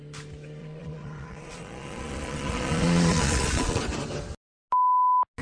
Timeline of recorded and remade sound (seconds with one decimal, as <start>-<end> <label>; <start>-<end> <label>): 0.0-0.6 recorded; 0.6-3.8 remade; 3.8-5.4 recorded